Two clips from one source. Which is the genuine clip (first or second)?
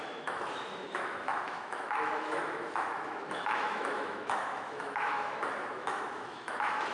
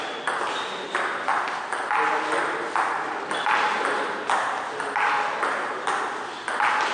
second